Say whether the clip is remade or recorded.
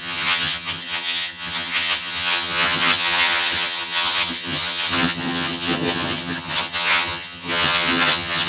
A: remade